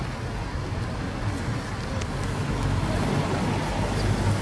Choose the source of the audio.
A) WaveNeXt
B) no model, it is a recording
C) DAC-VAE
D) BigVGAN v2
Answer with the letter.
B